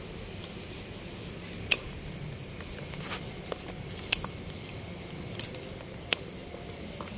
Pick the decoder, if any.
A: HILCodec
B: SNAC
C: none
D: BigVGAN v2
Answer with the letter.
C